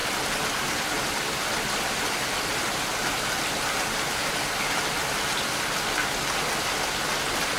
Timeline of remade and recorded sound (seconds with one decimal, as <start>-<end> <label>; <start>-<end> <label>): 0.0-7.6 recorded